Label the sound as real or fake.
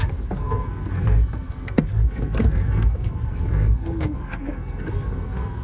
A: fake